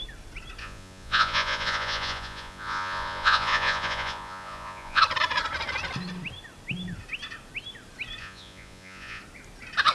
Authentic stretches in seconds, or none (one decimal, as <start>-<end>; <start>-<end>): 0.0-0.6; 5.0-8.2; 9.2-9.9